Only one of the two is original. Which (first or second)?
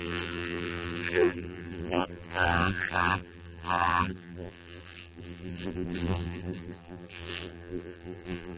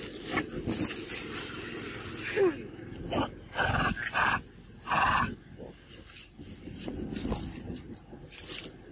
second